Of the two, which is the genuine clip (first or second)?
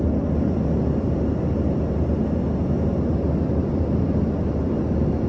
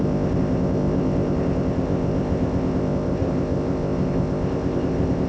first